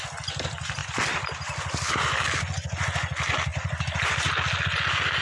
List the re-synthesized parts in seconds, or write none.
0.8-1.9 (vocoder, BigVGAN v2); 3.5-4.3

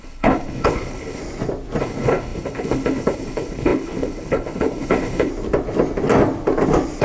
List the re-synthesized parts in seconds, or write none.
0.0-1.2 (codec, HILCodec); 1.8-5.3

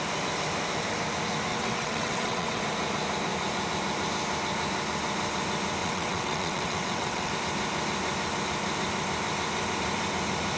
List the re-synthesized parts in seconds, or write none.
1.5-2.6 (vocoder, WaveNeXt); 5.8-7.3

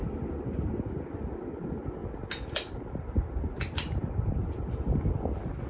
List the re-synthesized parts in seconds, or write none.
none

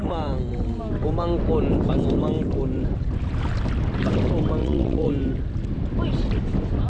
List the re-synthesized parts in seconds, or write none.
4.6-5.1 (vocoder, WaveNeXt)

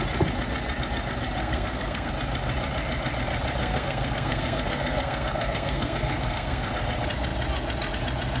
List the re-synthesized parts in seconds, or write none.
1.4-2.1 (codec, SNAC); 3.6-6.7

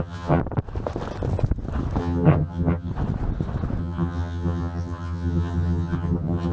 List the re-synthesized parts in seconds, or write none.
0.0-0.4 (vocoder, HiFi-GAN); 2.0-2.9; 3.8-6.5